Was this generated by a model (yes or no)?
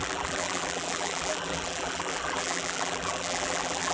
yes